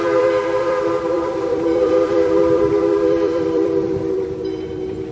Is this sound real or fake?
fake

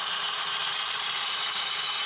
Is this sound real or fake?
fake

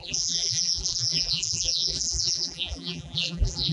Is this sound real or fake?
fake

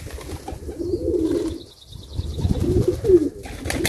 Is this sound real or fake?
real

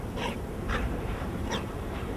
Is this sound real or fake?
fake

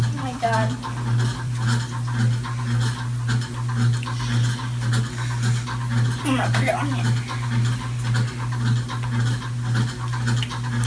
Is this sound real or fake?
real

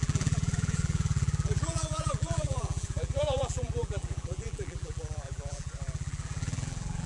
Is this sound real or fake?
fake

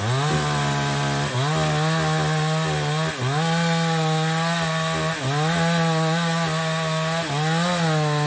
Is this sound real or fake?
real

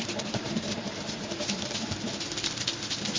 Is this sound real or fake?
fake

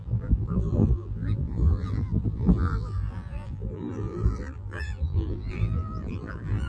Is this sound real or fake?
fake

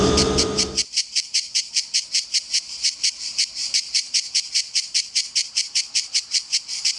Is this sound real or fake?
fake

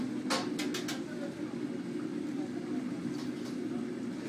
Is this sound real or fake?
real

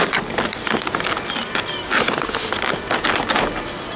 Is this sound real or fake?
real